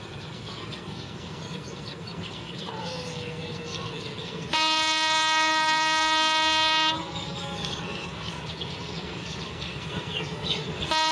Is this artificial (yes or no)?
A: yes